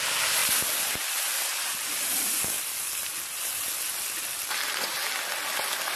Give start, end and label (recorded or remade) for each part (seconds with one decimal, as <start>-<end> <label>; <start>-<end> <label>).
0.0-6.0 recorded